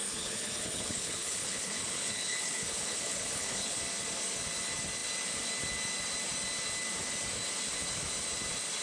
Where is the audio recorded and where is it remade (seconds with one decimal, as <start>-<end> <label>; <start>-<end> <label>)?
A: 0.0-3.8 remade; 3.8-8.8 recorded